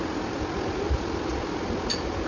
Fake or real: fake